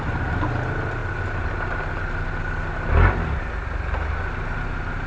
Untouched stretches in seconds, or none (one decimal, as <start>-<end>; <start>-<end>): 0.0-5.1